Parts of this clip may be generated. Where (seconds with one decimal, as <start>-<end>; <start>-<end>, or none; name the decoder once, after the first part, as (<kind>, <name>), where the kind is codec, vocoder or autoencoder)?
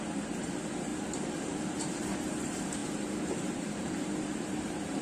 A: 0.0-0.9 (vocoder, BigVGAN v2); 1.7-5.0